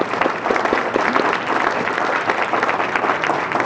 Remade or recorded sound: recorded